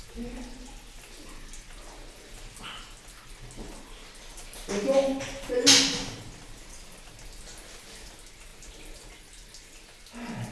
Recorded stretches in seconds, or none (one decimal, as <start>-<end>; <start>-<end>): 0.0-10.5

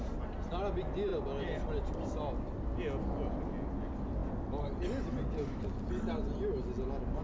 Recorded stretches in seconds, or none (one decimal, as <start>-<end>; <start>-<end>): 0.0-7.2